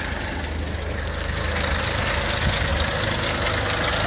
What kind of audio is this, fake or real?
real